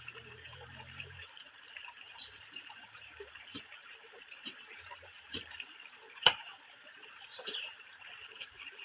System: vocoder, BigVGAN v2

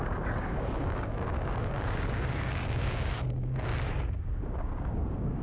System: codec, DAC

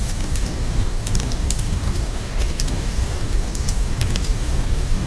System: codec, DAC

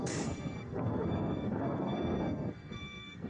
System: codec, SNAC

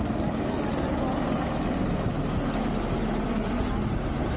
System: none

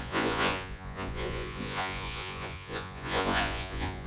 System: vocoder, Vocos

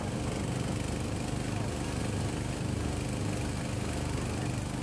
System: none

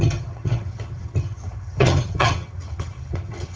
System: vocoder, HiFi-GAN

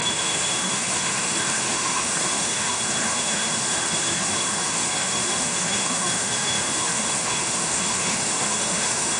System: autoencoder, DAC-VAE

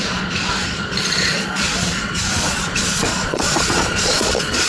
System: vocoder, Vocos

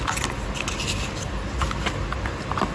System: none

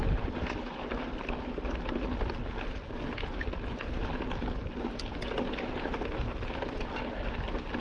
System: none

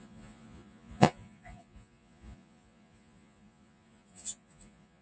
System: vocoder, Vocos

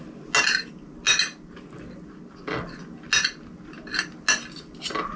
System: none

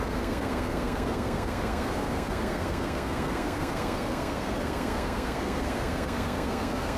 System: codec, SNAC